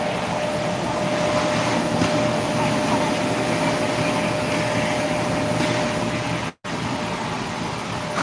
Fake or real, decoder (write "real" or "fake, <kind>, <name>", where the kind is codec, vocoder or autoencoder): real